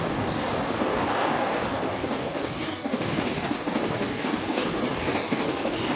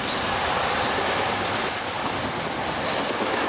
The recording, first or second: second